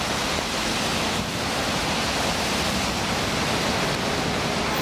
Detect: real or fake real